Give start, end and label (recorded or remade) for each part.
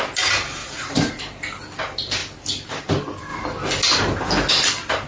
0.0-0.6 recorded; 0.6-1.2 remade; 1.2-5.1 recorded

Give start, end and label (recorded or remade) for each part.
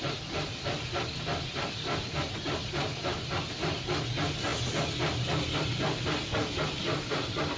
0.0-7.6 recorded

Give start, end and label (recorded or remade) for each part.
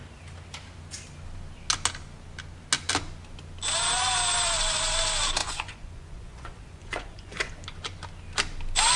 0.0-5.4 recorded; 5.4-7.5 remade; 7.5-9.0 recorded